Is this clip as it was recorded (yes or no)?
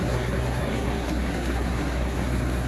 no